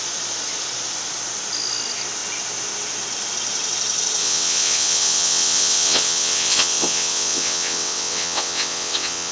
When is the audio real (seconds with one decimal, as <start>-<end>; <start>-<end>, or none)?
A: 0.0-4.2